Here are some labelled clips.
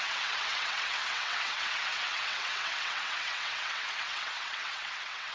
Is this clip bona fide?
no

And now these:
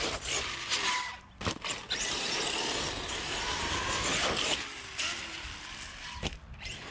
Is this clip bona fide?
yes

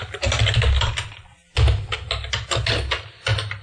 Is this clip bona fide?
yes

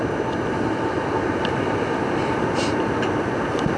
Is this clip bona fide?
yes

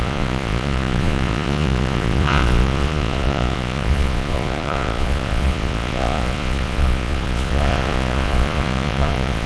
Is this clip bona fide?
no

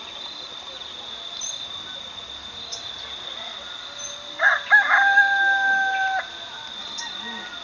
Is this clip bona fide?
yes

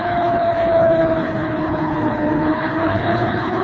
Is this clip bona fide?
no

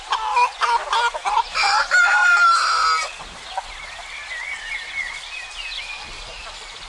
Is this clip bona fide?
yes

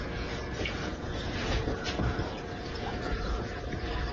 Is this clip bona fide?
no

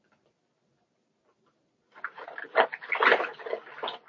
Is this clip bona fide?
yes